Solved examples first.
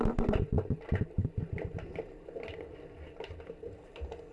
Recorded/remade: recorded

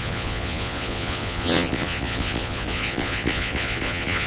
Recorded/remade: remade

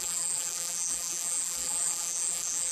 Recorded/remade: remade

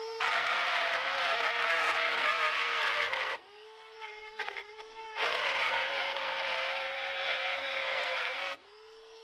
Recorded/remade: remade